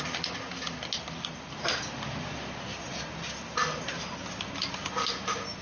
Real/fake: real